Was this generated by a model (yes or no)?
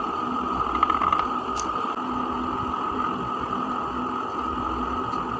no